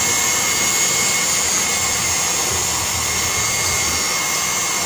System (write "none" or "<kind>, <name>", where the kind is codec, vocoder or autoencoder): none